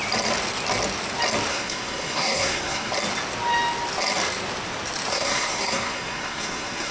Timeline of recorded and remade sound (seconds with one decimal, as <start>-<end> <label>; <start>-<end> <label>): 0.0-1.5 recorded; 1.5-2.9 remade; 2.9-5.1 recorded; 5.1-6.9 remade